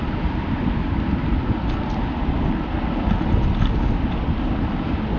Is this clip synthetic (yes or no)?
no